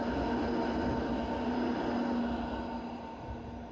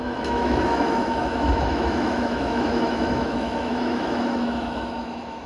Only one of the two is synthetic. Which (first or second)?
second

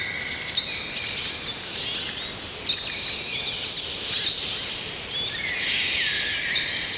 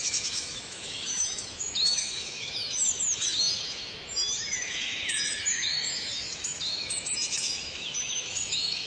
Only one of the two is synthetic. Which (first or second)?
second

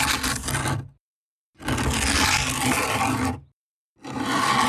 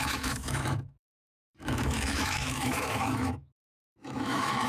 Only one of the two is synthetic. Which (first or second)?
second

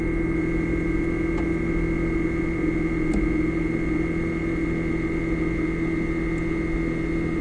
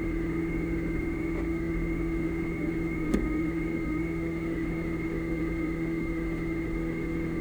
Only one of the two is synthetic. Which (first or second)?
second